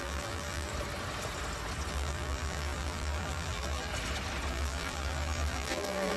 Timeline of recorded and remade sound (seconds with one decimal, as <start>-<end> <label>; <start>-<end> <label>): 0.0-0.7 remade; 0.7-1.9 recorded; 1.9-3.9 remade; 3.9-4.5 recorded; 4.5-6.2 remade